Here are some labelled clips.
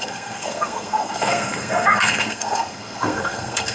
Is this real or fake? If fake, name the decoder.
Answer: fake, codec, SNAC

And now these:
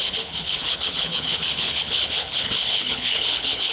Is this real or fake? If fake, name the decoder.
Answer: fake, codec, HILCodec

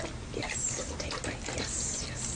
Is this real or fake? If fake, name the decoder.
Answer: real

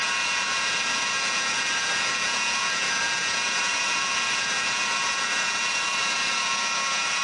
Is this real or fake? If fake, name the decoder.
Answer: fake, vocoder, Vocos